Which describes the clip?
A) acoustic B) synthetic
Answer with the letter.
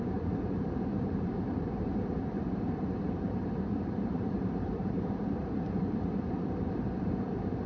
B